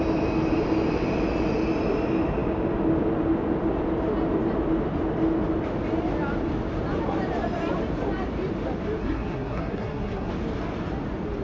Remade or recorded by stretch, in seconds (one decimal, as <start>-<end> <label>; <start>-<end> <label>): 0.0-9.0 recorded; 9.0-10.3 remade; 10.3-11.4 recorded